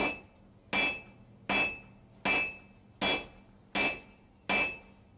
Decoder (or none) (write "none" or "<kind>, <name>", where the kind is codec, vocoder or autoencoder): none